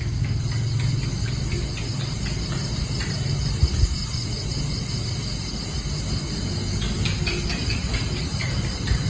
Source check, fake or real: real